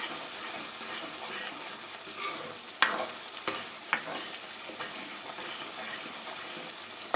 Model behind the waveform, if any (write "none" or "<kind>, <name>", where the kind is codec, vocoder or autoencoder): none